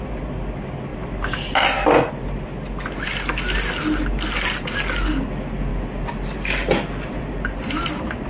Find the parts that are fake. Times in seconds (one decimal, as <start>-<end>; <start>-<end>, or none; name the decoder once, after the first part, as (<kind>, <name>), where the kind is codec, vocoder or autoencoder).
none